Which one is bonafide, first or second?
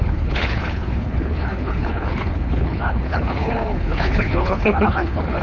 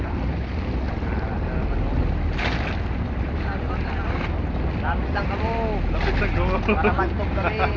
second